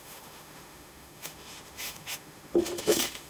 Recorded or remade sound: remade